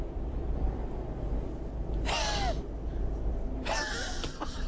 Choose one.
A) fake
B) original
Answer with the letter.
B